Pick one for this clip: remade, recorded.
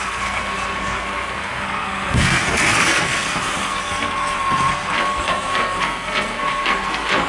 remade